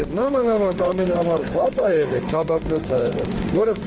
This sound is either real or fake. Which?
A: fake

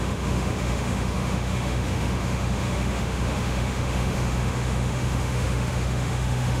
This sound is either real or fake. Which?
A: fake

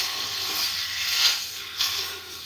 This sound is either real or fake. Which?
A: fake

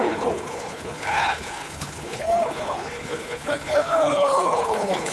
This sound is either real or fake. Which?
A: fake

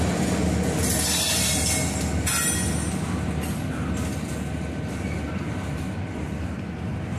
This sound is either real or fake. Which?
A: real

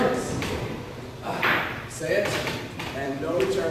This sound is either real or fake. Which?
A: fake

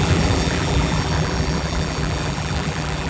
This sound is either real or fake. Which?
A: fake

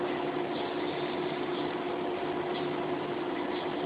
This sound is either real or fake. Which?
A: real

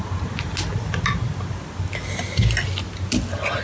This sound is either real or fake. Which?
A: real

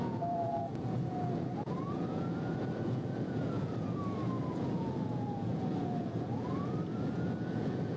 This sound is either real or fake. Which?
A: fake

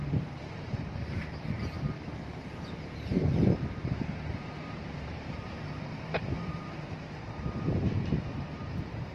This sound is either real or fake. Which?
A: fake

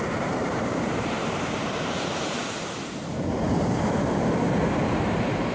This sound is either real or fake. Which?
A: fake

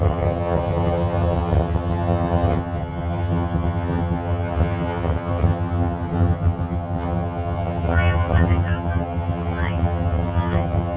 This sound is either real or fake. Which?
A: fake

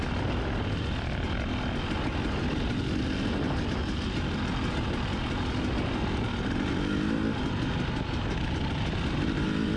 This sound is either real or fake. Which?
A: real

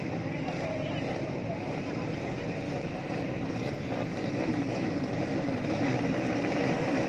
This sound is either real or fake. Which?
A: fake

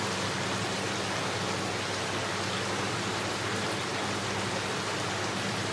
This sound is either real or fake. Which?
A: real